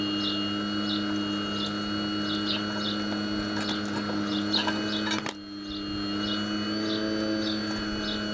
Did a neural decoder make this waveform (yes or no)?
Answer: no